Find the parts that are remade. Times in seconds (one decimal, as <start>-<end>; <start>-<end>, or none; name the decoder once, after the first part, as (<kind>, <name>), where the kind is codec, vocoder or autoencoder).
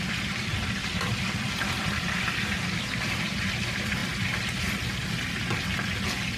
0.0-4.0 (vocoder, BigVGAN v2)